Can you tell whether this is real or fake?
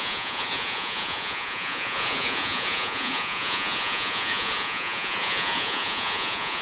fake